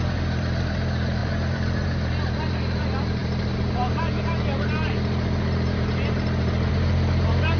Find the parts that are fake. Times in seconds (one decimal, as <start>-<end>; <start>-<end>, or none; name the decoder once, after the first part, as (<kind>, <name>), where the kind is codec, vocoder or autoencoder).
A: 0.0-7.6 (vocoder, BigVGAN v2)